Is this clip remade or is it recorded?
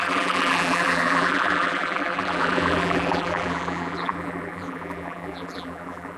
remade